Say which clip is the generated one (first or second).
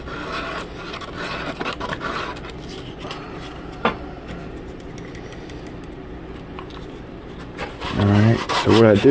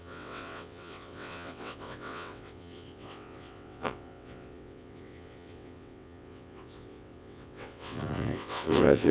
second